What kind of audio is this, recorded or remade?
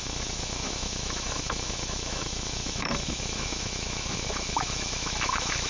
remade